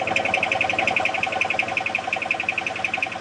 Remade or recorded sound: recorded